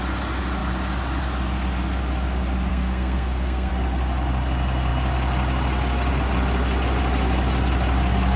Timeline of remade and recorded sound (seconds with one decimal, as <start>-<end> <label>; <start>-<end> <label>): 0.0-2.7 recorded; 2.7-3.7 remade; 3.7-8.4 recorded